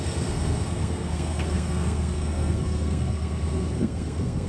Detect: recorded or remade remade